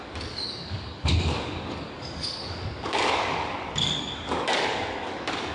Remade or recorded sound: remade